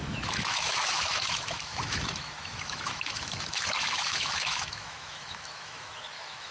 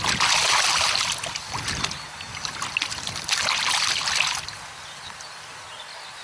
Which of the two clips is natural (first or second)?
second